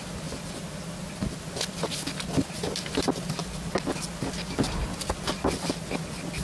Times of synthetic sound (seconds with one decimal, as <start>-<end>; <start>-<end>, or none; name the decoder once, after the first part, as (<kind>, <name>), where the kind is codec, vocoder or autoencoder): none